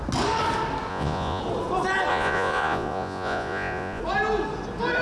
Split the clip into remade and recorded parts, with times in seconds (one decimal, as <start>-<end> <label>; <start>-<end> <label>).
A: 0.0-0.9 recorded; 0.9-1.4 remade; 1.4-2.1 recorded; 2.1-4.0 remade; 4.0-5.0 recorded